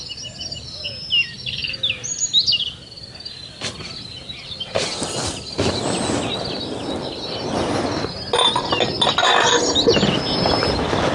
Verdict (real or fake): real